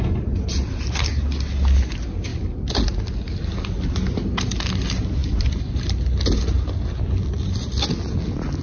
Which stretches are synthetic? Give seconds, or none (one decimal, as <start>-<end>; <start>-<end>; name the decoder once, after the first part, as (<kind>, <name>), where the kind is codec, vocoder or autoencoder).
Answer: 5.2-7.0 (vocoder, BigVGAN v2)